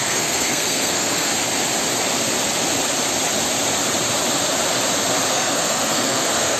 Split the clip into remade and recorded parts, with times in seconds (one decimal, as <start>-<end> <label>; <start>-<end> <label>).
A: 0.0-1.3 remade; 1.3-5.3 recorded; 5.3-6.6 remade